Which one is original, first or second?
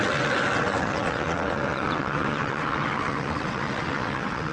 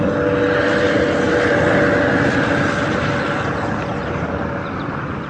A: second